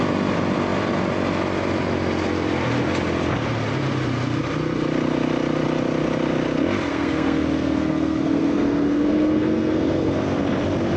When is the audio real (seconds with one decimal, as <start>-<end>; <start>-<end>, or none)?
0.0-6.9; 10.4-11.0